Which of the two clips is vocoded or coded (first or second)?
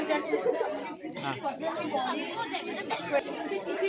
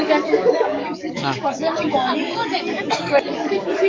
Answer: second